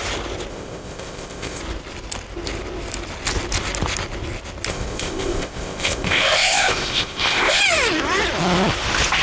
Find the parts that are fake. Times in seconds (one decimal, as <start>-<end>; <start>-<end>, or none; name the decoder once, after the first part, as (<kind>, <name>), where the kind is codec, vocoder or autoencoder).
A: 0.5-1.6 (codec, ZipCodec); 4.7-7.6